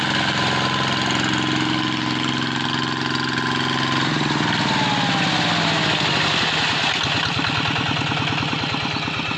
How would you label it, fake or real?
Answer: real